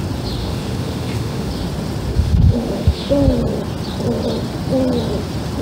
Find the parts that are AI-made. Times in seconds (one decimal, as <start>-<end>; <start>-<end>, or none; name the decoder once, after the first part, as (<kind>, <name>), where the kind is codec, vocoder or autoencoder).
0.4-1.5 (autoencoder, DAC-VAE); 2.1-3.1